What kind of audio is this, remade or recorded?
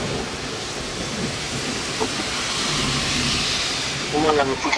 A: recorded